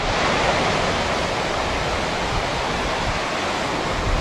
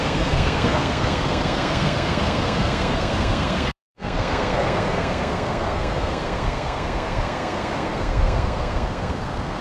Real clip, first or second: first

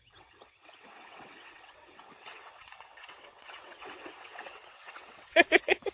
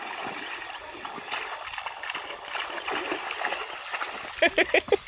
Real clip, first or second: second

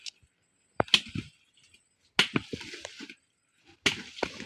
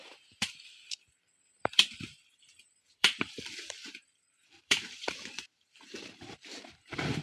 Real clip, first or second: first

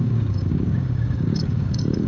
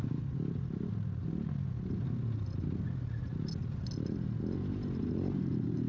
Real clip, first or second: second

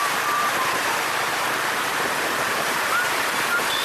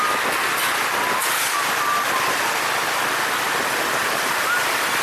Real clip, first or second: second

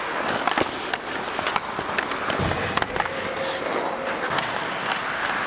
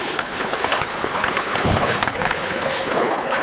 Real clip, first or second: first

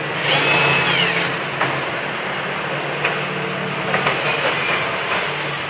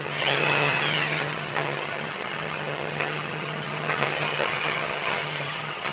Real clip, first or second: first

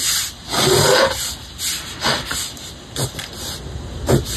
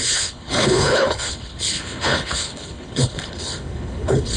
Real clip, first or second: first